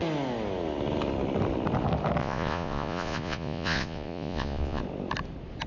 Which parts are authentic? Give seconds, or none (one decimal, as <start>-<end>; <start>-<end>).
0.0-2.2; 4.8-5.7